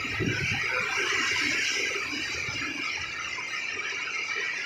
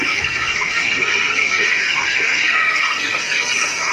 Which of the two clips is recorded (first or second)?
first